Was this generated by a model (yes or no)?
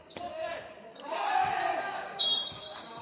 yes